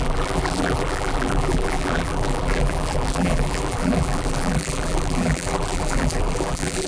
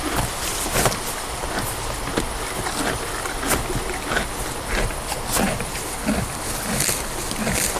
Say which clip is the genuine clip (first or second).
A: second